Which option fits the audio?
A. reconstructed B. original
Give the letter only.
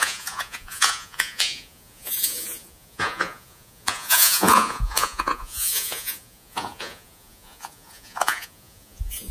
A